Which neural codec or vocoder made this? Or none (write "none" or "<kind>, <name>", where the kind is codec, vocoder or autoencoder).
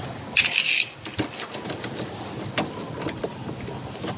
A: none